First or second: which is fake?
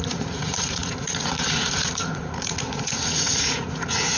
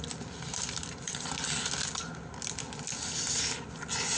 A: first